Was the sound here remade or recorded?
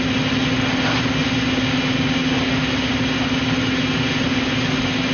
recorded